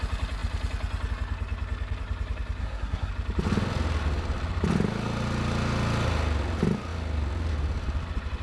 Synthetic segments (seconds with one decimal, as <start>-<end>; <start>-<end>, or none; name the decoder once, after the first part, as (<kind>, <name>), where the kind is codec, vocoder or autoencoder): 2.6-3.1 (codec, SNAC)